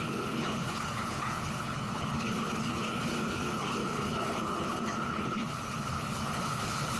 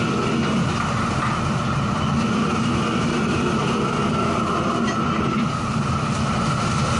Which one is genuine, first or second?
second